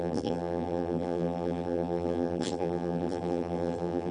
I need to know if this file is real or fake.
fake